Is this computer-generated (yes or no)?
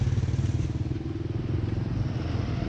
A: no